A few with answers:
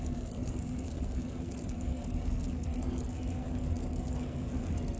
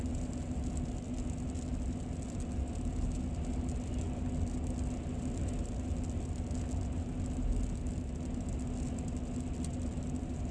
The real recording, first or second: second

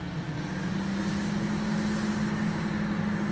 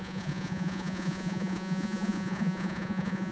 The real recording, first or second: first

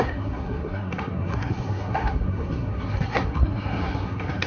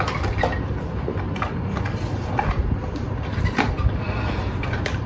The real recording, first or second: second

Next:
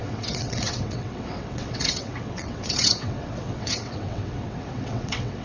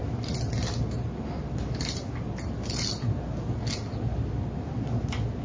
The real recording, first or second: second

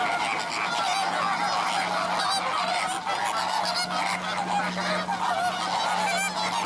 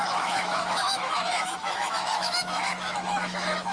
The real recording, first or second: first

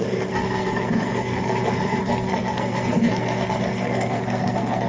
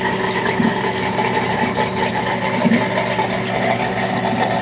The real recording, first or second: second